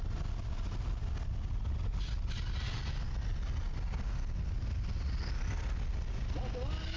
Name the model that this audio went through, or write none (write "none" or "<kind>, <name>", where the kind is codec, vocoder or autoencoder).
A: none